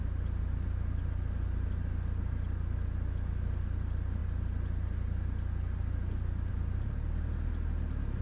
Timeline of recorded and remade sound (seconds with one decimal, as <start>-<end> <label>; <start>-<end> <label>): 0.0-8.2 recorded